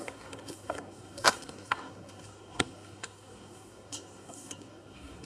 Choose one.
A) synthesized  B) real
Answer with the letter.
A